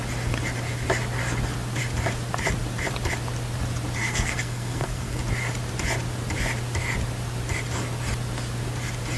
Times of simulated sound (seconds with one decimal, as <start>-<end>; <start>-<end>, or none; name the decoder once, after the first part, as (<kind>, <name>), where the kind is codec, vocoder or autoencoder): 4.0-5.2 (codec, SNAC)